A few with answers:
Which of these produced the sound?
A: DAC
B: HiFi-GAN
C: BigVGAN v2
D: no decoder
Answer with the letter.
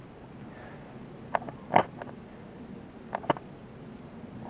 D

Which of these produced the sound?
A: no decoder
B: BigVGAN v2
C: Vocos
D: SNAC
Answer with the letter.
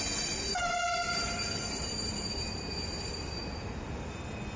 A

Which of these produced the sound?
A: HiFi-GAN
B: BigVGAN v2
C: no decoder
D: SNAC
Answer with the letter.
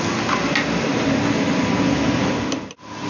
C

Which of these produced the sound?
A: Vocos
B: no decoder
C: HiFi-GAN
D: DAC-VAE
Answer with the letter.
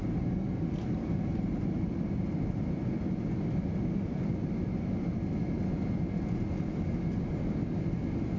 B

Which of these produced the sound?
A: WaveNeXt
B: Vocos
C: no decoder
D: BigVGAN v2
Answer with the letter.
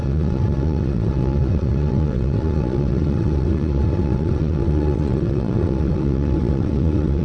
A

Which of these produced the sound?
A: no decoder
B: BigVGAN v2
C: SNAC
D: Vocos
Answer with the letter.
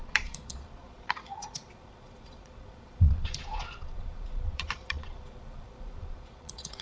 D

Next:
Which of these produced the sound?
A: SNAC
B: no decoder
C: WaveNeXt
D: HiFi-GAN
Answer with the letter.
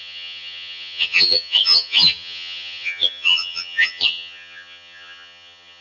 D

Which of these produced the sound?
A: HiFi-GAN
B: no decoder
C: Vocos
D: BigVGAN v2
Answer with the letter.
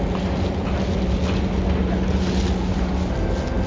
B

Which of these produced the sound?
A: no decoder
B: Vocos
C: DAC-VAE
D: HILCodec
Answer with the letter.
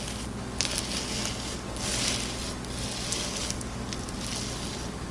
A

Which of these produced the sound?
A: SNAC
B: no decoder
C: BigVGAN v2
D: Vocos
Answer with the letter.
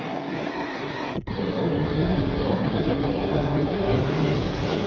A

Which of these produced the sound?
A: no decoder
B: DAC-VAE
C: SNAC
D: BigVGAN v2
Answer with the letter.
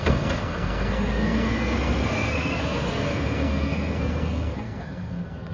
C